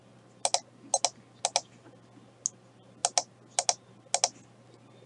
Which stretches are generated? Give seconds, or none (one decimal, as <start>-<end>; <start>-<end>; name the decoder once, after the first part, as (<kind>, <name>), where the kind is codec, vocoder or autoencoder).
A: none